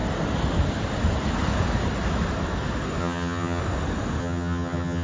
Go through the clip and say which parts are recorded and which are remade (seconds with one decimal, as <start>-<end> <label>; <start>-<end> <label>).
0.0-3.0 recorded; 3.0-3.6 remade; 3.6-4.2 recorded; 4.2-5.0 remade